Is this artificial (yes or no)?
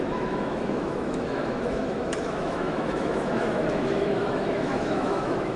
yes